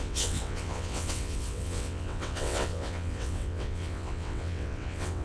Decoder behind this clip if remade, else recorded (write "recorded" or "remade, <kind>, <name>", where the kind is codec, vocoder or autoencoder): remade, vocoder, WaveNeXt